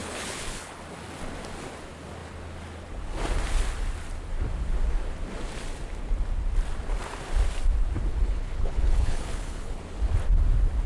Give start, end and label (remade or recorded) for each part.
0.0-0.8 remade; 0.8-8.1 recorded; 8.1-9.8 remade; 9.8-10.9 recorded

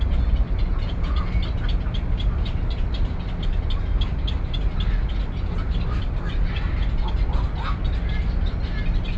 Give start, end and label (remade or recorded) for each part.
0.0-0.7 recorded; 0.7-1.3 remade; 1.3-9.2 recorded

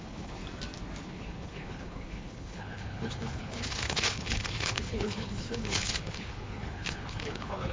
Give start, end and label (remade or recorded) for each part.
0.0-0.4 remade; 0.4-1.0 recorded; 1.0-7.7 remade

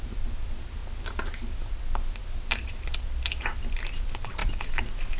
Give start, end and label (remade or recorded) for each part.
0.0-5.2 recorded